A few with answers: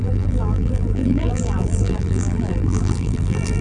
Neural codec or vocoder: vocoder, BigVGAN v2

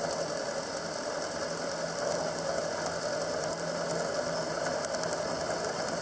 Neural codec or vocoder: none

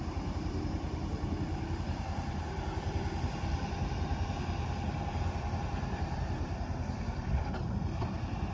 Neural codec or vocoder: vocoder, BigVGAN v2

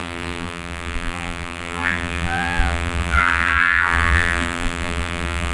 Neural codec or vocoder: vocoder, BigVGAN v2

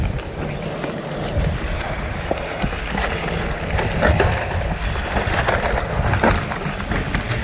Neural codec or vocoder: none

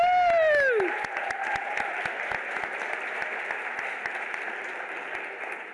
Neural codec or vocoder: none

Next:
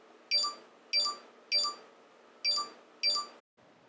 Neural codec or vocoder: none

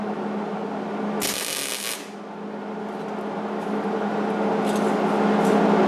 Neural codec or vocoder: none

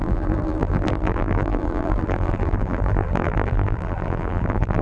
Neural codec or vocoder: vocoder, BigVGAN v2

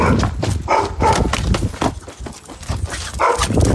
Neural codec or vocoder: none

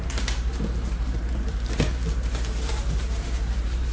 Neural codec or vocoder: vocoder, BigVGAN v2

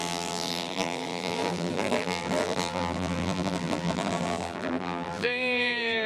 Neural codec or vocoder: vocoder, BigVGAN v2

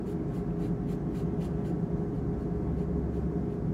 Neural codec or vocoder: none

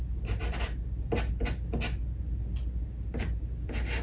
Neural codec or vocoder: none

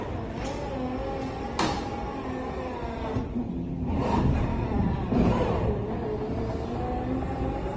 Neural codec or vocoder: none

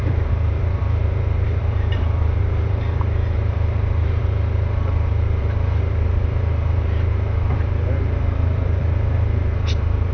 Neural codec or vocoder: vocoder, BigVGAN v2